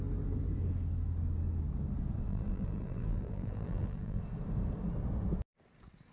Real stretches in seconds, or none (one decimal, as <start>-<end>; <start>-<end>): 0.0-2.3; 4.2-6.1